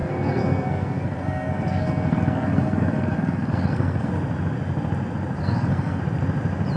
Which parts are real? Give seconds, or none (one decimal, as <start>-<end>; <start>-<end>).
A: 4.1-5.4; 6.0-6.8